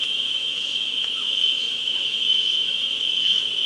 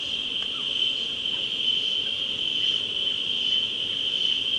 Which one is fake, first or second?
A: first